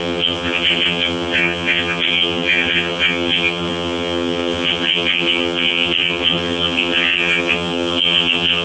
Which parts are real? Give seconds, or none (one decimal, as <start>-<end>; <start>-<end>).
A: none